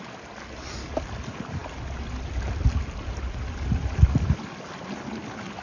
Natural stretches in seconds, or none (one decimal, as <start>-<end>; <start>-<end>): 0.0-5.6